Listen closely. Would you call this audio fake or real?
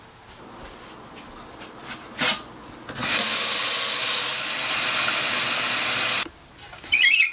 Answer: real